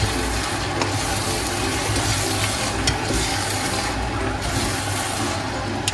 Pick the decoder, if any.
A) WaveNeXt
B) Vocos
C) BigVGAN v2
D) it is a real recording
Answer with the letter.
D